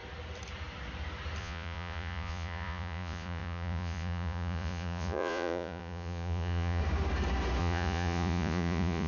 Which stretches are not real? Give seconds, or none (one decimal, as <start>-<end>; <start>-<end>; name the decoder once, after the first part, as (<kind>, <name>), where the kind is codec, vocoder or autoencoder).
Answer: 1.4-6.8 (vocoder, Vocos); 7.6-9.1